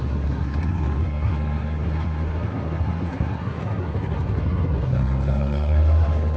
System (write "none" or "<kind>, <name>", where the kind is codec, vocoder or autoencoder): codec, SNAC